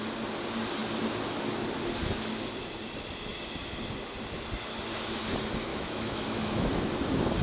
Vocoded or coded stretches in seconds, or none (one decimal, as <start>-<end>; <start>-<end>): 5.7-6.7